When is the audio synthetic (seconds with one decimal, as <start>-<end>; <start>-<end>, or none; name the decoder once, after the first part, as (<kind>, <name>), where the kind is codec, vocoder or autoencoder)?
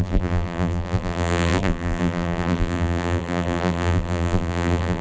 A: 0.0-5.0 (vocoder, BigVGAN v2)